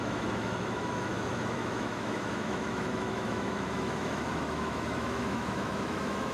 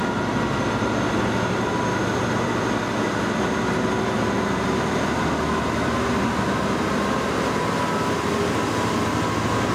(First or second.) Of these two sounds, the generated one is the first